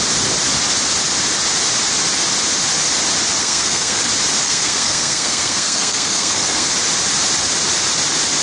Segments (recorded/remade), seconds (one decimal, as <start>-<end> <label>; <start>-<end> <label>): 0.0-3.4 recorded; 3.4-4.0 remade; 4.0-4.4 recorded; 4.4-6.7 remade; 6.7-8.4 recorded